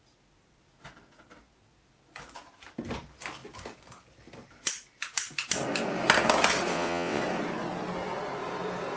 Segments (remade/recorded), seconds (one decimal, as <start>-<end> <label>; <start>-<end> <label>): 0.0-6.7 recorded; 6.7-7.2 remade; 7.2-9.0 recorded